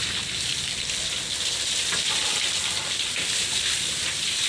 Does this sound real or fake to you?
real